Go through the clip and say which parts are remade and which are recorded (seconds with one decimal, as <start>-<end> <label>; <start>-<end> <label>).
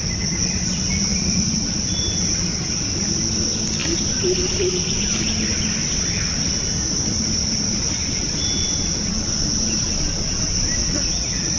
0.0-10.8 recorded; 10.8-11.6 remade